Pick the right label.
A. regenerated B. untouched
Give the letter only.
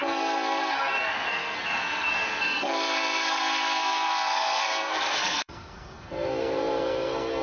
A